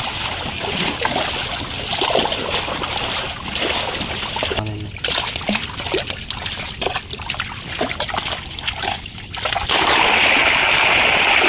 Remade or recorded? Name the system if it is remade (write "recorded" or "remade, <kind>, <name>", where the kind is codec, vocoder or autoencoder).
recorded